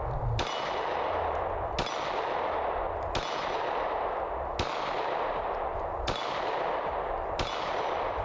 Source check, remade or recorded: recorded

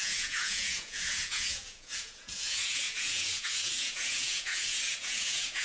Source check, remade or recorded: remade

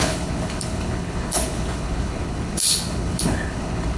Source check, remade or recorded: remade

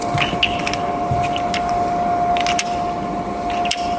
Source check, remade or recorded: recorded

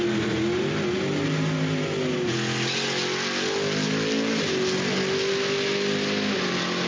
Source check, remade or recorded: recorded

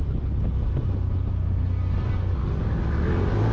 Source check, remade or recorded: recorded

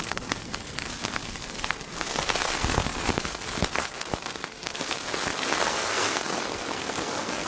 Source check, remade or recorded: remade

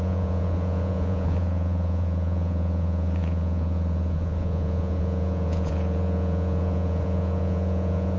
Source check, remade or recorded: remade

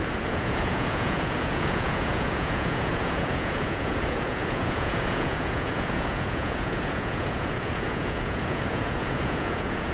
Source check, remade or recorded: remade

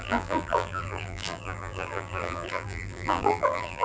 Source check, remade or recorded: remade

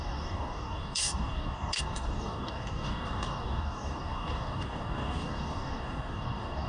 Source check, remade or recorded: remade